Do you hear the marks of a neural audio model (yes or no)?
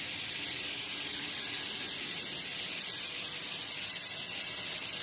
no